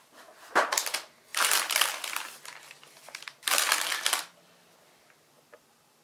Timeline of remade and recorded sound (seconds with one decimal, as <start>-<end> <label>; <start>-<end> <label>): 0.0-1.3 recorded; 1.3-2.1 remade; 2.1-6.0 recorded